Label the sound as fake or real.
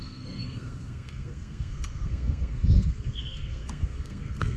fake